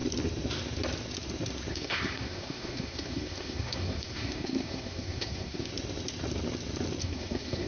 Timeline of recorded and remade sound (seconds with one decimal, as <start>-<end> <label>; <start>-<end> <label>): 0.0-1.7 recorded; 1.7-5.7 remade; 5.7-7.0 recorded; 7.0-7.7 remade